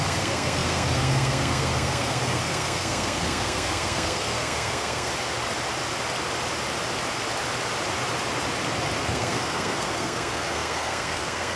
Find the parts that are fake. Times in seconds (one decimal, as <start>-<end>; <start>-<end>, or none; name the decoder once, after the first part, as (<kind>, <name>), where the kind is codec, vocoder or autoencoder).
0.0-5.1 (codec, SNAC); 9.0-11.6